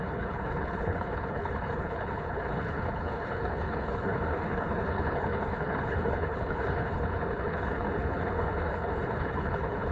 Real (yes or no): no